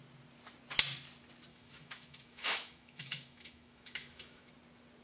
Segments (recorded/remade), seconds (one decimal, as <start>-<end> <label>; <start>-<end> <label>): 0.0-1.5 recorded; 1.5-4.5 remade; 4.5-5.0 recorded